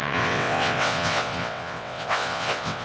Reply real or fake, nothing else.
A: fake